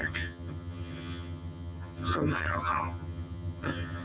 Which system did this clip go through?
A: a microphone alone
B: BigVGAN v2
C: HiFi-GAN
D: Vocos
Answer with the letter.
C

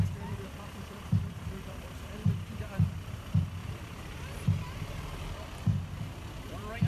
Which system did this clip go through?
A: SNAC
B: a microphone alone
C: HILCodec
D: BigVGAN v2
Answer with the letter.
D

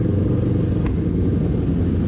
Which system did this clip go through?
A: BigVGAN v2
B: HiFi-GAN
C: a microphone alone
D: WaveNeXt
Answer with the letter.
C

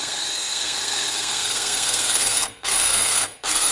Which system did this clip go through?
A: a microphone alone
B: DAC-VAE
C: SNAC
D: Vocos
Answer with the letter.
C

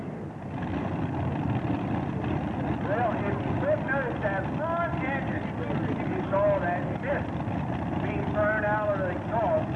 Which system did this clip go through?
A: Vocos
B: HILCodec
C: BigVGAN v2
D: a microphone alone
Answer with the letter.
D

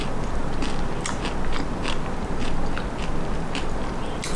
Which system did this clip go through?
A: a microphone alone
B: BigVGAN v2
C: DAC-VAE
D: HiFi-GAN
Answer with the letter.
A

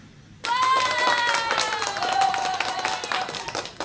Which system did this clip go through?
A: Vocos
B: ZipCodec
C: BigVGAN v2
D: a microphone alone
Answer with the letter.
C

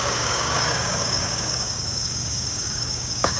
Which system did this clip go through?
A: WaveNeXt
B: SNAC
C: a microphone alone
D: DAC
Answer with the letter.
D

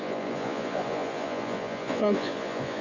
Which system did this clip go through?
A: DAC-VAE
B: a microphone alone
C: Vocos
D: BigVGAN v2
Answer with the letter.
C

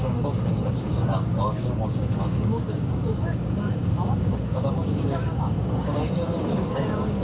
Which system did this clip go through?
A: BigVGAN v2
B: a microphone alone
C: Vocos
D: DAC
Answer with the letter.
D